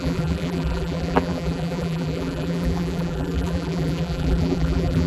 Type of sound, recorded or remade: remade